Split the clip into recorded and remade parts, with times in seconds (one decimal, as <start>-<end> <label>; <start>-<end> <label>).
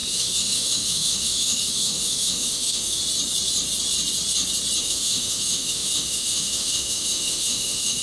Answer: 0.0-3.0 remade; 3.0-4.8 recorded; 4.8-8.0 remade